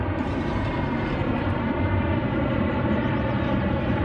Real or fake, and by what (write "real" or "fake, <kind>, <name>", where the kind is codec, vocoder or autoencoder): fake, vocoder, BigVGAN v2